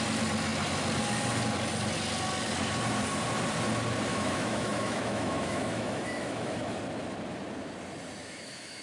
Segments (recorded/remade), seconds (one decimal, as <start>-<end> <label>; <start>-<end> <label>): 0.0-4.1 recorded; 4.1-6.8 remade; 6.8-8.2 recorded; 8.2-8.8 remade